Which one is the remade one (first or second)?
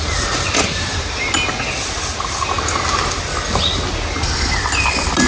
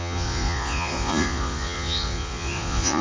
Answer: second